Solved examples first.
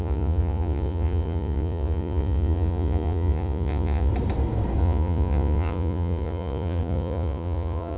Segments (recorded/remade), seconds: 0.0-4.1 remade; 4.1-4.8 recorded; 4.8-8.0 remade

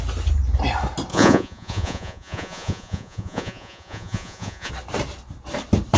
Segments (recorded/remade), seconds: 0.0-1.1 recorded; 1.1-4.7 remade; 4.7-6.0 recorded

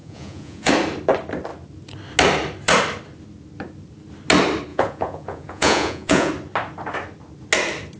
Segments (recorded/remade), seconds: 0.0-0.7 remade; 0.7-4.7 recorded; 4.7-6.3 remade; 6.3-8.0 recorded

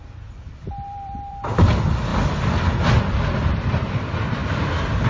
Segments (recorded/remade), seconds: 0.0-2.1 remade; 2.1-3.7 recorded; 3.7-5.1 remade